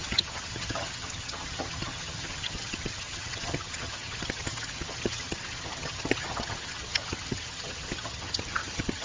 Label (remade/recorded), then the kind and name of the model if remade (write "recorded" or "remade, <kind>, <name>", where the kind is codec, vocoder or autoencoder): remade, vocoder, HiFi-GAN